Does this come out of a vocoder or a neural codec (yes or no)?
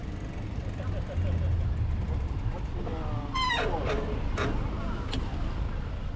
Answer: no